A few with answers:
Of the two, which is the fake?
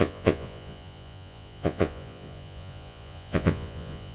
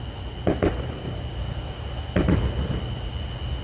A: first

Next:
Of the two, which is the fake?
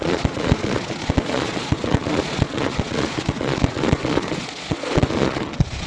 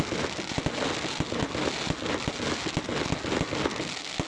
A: first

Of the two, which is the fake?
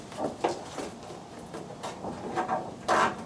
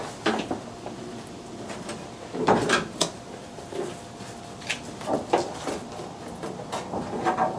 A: first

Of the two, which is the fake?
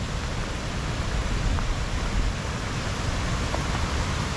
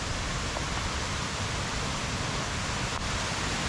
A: second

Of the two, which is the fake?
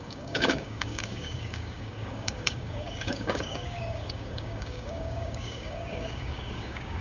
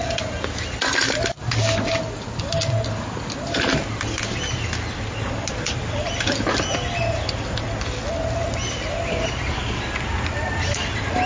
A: first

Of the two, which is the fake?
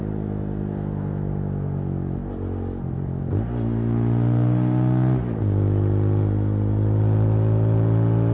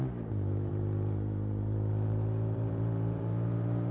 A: second